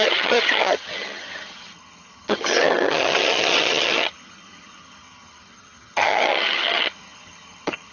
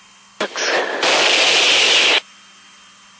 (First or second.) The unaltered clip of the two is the second